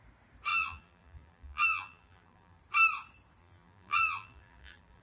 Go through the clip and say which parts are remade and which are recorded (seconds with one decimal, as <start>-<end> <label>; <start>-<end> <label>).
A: 0.0-0.5 recorded; 0.5-2.6 remade; 2.6-3.4 recorded; 3.4-5.0 remade